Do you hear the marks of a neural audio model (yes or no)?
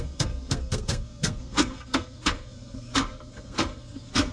yes